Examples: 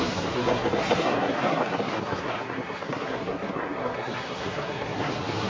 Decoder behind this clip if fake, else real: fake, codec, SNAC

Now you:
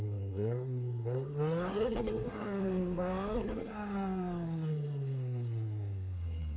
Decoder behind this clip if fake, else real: fake, codec, SNAC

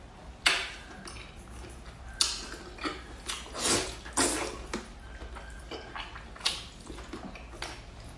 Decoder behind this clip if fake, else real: real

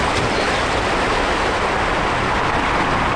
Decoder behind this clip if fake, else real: real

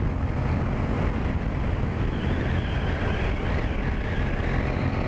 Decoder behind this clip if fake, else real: real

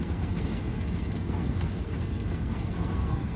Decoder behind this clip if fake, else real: fake, codec, SNAC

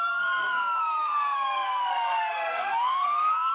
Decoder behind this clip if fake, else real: fake, codec, SNAC